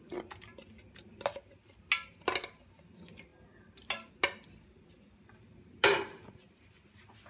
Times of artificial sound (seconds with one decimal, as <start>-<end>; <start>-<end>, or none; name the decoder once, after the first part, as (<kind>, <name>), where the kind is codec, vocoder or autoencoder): none